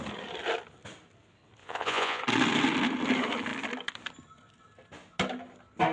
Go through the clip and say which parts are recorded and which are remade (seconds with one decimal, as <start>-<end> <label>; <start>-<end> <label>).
0.0-1.6 recorded; 1.6-2.2 remade; 2.2-5.9 recorded